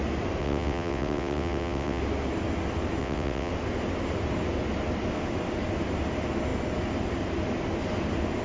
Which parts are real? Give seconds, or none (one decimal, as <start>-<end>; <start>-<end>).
0.0-0.4; 2.0-3.0; 3.5-8.4